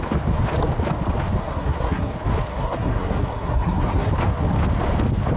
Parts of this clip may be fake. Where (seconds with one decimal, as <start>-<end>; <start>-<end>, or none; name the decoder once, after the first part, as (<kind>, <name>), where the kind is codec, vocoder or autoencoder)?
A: 1.4-2.1 (codec, SNAC); 2.5-4.1